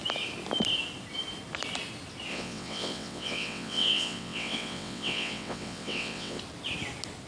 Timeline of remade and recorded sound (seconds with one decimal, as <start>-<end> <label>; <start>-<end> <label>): 0.0-2.3 recorded; 2.3-6.4 remade; 6.4-7.3 recorded